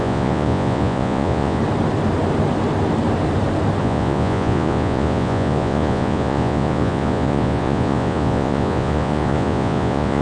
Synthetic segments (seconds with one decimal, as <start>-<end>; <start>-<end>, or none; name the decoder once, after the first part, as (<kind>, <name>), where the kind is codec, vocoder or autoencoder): 0.0-1.6 (vocoder, Vocos); 3.8-10.2